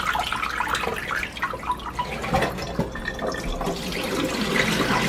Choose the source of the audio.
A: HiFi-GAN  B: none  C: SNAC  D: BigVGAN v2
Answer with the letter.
B